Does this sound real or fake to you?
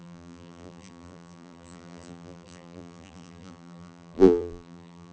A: fake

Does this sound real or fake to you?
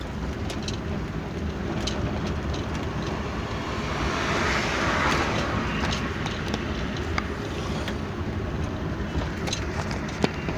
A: real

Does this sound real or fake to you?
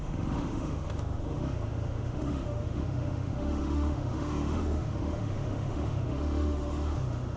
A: fake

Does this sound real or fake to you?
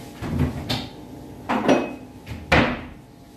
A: real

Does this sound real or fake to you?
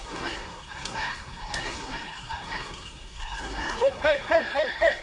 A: fake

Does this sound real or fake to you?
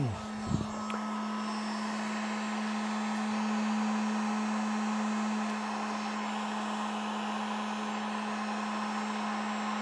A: real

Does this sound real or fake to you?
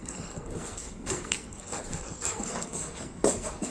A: fake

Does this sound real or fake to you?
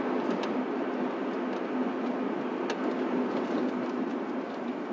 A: real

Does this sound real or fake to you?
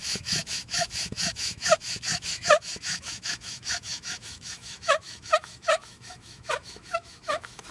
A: fake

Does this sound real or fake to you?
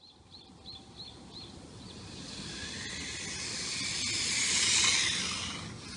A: real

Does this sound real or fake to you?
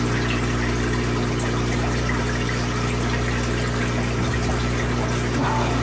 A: real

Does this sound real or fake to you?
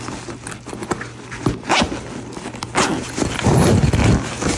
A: real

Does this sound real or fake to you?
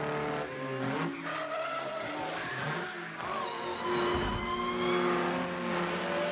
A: real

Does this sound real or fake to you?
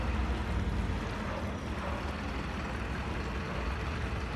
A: real